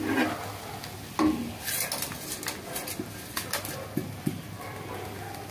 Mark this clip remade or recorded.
recorded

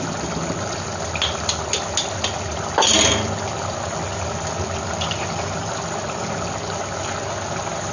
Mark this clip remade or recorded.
recorded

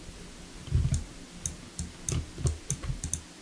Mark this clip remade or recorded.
recorded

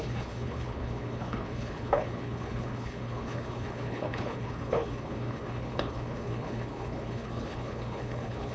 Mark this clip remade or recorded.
remade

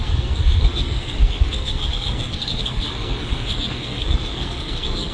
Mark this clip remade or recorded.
remade